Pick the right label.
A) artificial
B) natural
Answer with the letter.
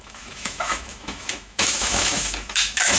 A